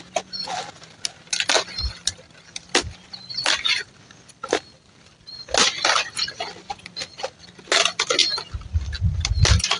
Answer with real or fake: real